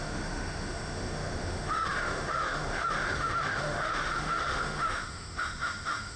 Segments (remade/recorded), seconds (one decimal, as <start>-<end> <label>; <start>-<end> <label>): 0.0-6.2 remade